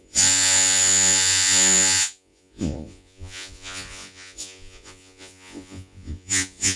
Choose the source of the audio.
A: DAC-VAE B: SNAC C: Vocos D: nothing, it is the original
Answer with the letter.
C